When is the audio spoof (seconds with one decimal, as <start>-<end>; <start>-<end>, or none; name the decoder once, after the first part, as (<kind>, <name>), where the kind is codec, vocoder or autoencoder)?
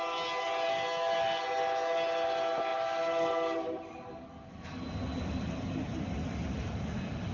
2.7-4.1 (vocoder, BigVGAN v2)